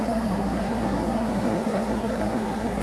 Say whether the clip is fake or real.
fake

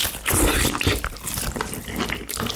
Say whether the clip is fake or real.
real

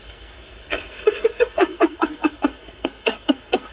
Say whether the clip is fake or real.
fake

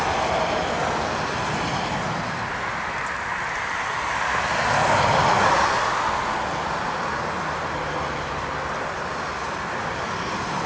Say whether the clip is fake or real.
real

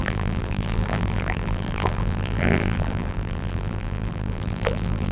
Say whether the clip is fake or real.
fake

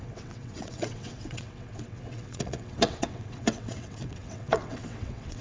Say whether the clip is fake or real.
fake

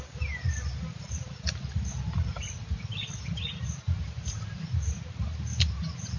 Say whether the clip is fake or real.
real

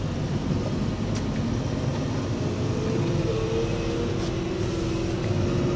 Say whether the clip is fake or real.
real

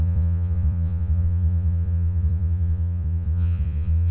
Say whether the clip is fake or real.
fake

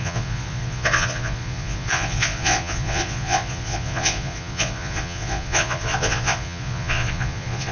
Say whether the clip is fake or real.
fake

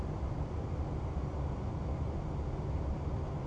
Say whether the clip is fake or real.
real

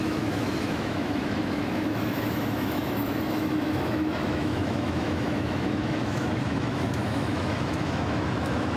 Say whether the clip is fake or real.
fake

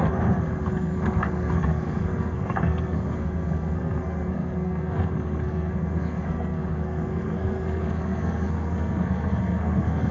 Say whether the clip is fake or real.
fake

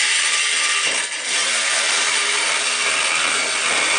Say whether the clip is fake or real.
real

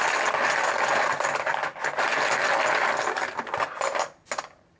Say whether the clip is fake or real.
real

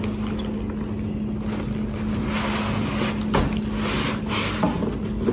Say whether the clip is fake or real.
real